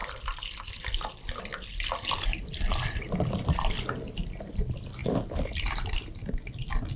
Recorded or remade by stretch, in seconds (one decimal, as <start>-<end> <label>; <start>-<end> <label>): 0.0-7.0 recorded